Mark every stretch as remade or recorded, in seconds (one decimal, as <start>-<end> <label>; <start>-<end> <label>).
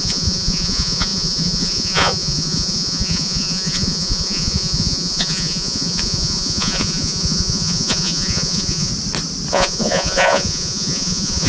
0.0-8.9 remade; 8.9-9.5 recorded; 9.5-11.5 remade